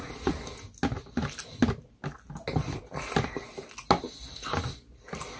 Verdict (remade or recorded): recorded